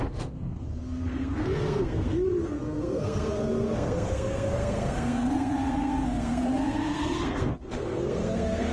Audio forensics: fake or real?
fake